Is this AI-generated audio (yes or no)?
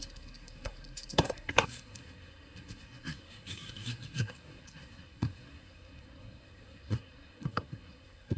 yes